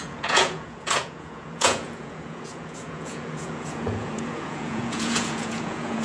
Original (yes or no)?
no